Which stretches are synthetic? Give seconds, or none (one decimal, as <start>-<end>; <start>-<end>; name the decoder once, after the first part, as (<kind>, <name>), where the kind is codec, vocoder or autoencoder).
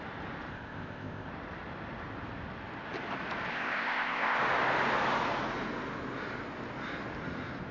0.5-1.3 (codec, ZipCodec); 3.5-4.4